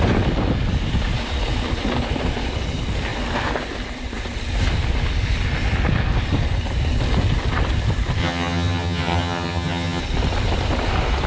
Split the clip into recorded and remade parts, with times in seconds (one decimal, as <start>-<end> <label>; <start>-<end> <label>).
0.0-8.2 recorded; 8.2-10.0 remade; 10.0-11.3 recorded